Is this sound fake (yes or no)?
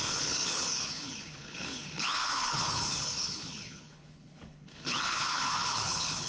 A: yes